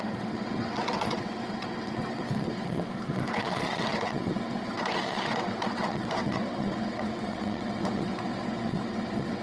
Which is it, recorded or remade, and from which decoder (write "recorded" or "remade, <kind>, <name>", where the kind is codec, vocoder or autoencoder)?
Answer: remade, vocoder, WaveNeXt